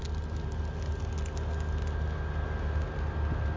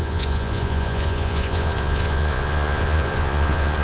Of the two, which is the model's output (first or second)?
second